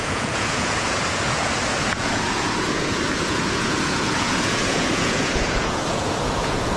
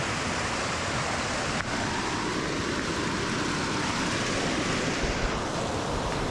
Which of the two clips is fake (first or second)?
first